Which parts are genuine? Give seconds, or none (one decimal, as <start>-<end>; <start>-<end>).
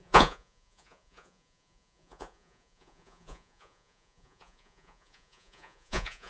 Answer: none